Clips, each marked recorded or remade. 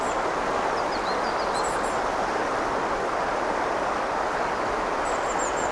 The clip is recorded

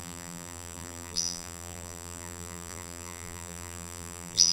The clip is remade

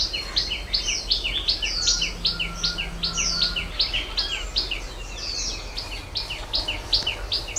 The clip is recorded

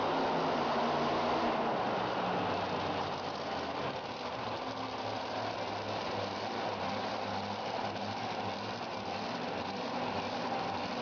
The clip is recorded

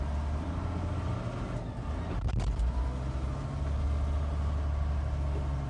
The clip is recorded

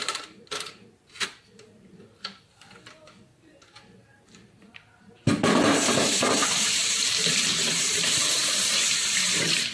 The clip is remade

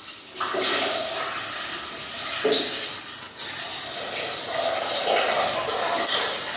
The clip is recorded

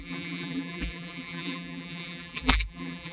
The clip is remade